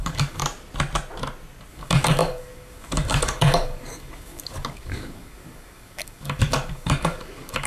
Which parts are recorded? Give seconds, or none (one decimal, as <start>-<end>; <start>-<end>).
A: 0.4-1.7